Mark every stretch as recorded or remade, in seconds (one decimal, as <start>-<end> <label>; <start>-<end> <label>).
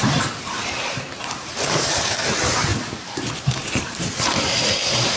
0.0-2.7 remade; 2.7-3.4 recorded; 3.4-5.2 remade